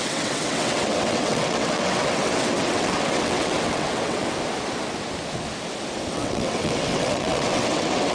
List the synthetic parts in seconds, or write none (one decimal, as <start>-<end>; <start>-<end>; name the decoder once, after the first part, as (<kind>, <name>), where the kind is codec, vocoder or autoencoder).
0.0-4.2 (vocoder, WaveNeXt); 6.1-8.1